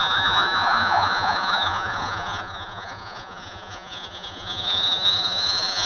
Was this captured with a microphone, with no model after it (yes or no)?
no